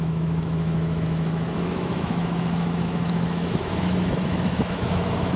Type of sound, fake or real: fake